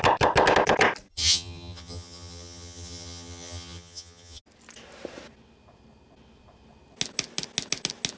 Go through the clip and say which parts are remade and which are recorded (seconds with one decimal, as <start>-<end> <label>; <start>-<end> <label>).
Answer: 0.0-1.1 recorded; 1.1-4.4 remade; 4.4-8.2 recorded